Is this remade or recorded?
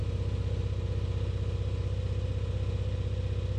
recorded